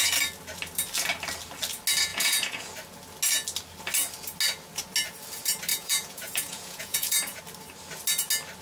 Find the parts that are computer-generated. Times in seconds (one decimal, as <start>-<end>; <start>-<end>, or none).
2.1-2.6; 5.7-7.4